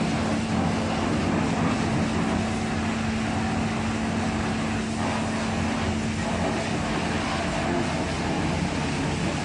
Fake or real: real